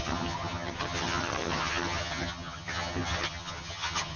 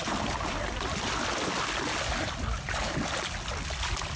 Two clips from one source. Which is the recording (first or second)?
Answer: second